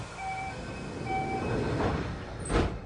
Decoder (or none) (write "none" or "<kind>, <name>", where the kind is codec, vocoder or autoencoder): none